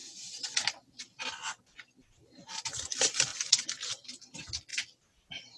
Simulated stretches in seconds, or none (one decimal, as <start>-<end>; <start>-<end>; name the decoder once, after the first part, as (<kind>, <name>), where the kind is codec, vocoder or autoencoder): 0.0-1.6 (vocoder, BigVGAN v2); 2.0-2.6; 3.3-3.9; 4.7-5.6